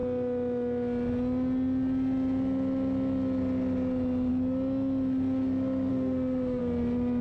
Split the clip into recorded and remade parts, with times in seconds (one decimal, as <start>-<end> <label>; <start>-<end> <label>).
0.0-5.9 recorded; 5.9-6.6 remade; 6.6-7.2 recorded